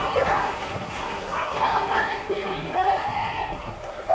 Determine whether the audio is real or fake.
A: fake